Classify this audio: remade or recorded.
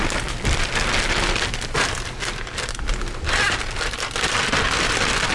recorded